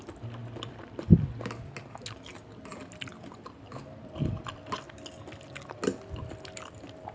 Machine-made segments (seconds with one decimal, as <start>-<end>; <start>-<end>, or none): none